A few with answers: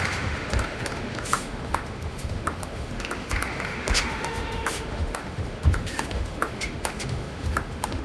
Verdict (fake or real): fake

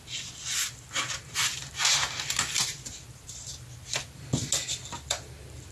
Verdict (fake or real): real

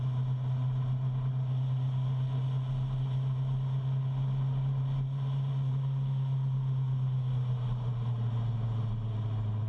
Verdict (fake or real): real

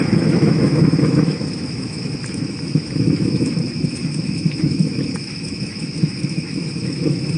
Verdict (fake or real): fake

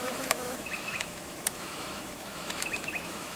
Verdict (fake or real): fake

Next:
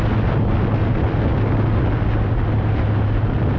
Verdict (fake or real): real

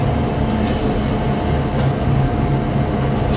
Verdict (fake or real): real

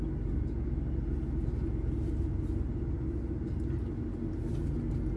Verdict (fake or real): real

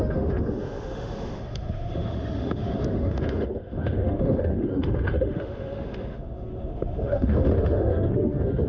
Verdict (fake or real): fake